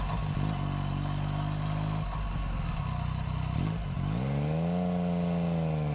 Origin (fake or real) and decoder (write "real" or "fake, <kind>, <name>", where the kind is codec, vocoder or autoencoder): real